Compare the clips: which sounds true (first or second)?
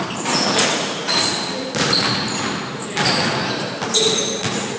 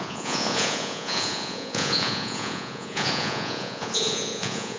first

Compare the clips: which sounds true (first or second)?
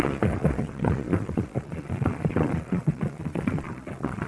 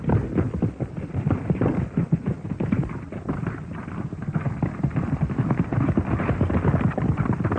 second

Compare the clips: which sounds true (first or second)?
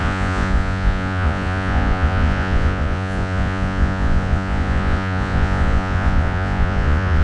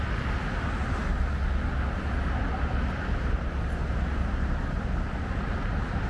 second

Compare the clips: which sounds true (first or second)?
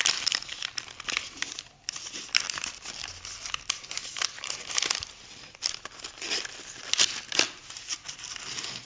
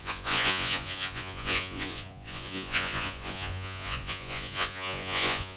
first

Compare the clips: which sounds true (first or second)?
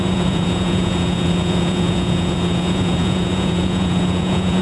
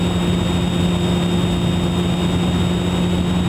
second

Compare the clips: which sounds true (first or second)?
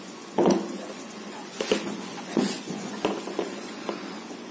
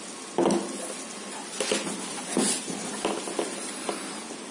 second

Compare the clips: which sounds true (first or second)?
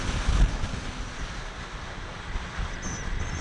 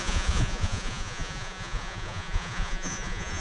first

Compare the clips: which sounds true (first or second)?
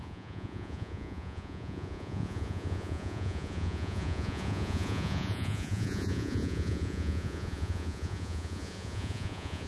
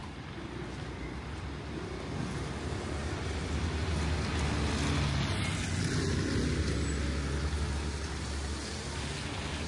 second